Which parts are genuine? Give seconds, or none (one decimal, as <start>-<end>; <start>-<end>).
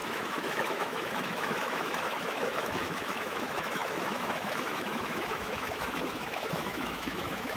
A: none